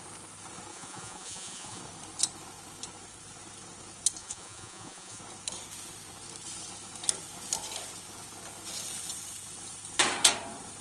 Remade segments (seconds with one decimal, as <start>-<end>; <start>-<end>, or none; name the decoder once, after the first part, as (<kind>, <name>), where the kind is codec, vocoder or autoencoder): 0.7-1.8 (vocoder, Vocos); 4.2-5.2

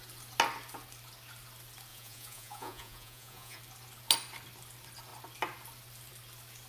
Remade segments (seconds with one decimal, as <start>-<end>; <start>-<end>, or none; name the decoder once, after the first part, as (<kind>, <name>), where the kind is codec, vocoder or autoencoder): 1.9-3.6 (vocoder, Vocos)

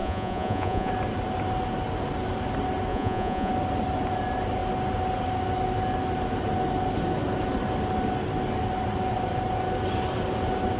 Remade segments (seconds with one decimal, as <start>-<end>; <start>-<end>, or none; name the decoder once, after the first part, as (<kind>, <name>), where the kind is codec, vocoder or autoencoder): 0.0-0.9 (vocoder, Vocos); 2.9-3.5

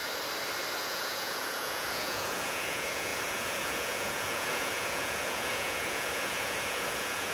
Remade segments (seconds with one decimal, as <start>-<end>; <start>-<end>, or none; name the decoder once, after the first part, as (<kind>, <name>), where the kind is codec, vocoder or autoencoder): 0.8-7.3 (vocoder, Vocos)

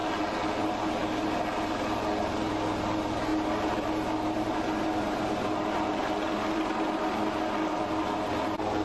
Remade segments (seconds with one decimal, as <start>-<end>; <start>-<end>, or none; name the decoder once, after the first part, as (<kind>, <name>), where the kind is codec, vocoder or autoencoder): none